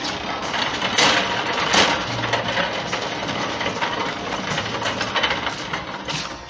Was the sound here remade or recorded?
recorded